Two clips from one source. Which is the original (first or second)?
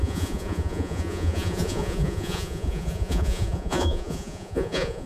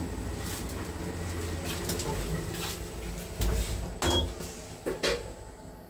second